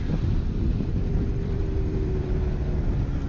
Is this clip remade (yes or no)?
yes